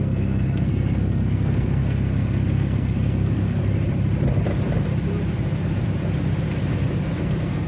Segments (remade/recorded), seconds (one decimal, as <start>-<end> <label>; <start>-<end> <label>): 0.0-3.6 remade; 3.6-7.2 recorded; 7.2-7.7 remade